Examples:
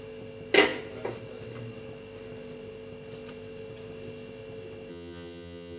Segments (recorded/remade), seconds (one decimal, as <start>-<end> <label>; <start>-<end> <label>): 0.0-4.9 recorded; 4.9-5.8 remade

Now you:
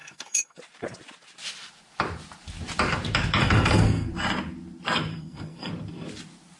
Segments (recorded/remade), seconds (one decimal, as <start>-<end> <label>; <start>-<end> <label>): 0.0-0.6 remade; 0.6-3.4 recorded; 3.4-4.1 remade; 4.1-5.1 recorded; 5.1-5.7 remade; 5.7-6.6 recorded

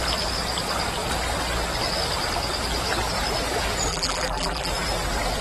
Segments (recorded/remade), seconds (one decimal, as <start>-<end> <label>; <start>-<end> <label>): 0.0-3.9 recorded; 3.9-4.7 remade; 4.7-5.4 recorded

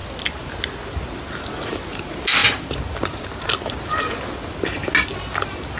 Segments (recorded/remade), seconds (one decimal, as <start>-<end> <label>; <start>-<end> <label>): 0.0-5.8 recorded